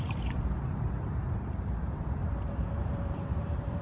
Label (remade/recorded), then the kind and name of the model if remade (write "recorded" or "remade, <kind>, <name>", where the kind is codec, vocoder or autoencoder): remade, vocoder, BigVGAN v2